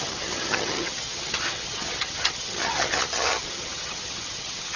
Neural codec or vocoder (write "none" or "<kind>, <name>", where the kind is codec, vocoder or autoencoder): vocoder, HiFi-GAN